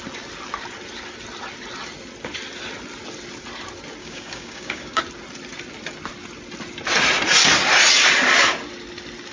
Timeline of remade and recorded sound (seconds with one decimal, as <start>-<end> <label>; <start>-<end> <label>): 0.0-4.0 recorded; 4.0-5.0 remade; 5.0-9.3 recorded